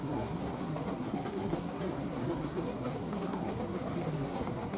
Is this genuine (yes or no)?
no